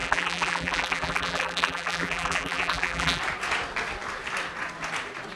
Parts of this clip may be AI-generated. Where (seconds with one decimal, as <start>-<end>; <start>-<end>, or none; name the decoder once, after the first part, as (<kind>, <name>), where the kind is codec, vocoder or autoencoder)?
0.0-3.2 (vocoder, BigVGAN v2)